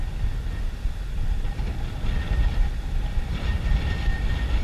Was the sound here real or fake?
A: real